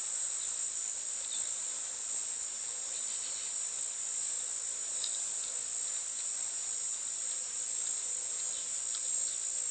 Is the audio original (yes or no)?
yes